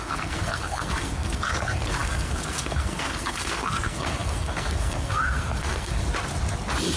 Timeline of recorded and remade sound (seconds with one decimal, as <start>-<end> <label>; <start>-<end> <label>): 0.0-6.0 remade; 6.0-7.0 recorded